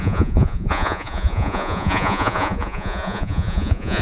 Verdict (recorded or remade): remade